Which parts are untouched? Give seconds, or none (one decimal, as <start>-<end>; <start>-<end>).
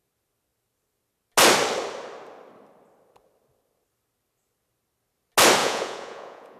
0.0-5.6